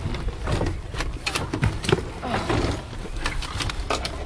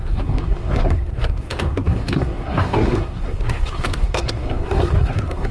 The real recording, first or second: first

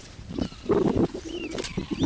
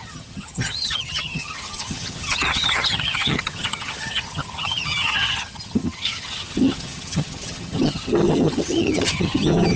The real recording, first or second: first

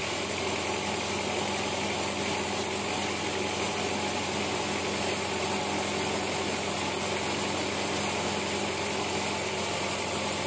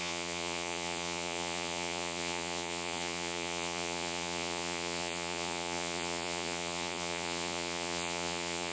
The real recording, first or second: first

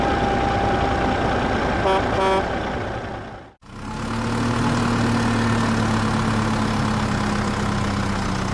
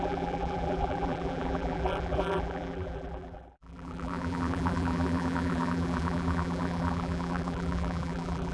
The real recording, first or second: first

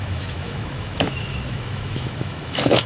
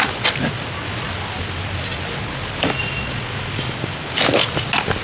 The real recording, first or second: second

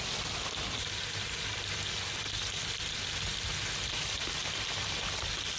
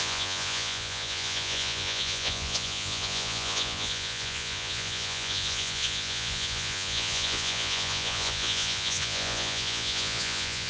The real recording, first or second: first